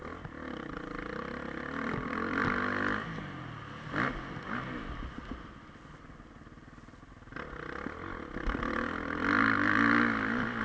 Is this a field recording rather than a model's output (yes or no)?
yes